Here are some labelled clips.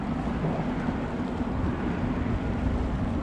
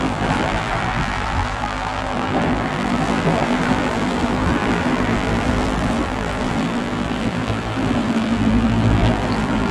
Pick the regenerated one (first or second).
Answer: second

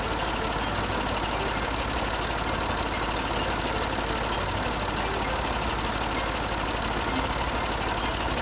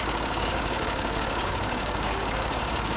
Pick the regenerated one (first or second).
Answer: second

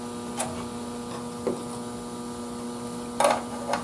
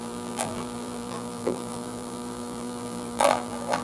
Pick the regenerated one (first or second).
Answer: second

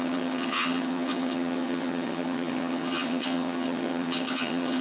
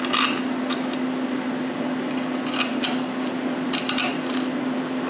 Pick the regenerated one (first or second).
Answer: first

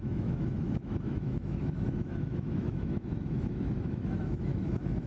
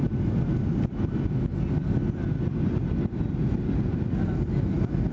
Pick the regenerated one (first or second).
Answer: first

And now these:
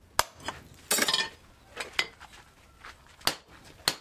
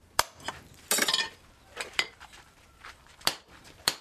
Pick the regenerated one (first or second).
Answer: second